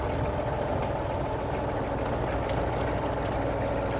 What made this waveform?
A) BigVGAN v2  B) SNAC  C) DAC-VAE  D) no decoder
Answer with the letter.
D